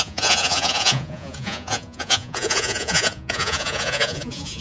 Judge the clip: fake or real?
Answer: fake